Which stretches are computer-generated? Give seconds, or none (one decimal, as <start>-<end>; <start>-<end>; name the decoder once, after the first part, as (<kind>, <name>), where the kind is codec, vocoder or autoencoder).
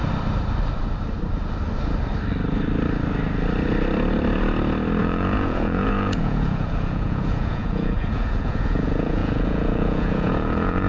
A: 5.0-10.9 (vocoder, Vocos)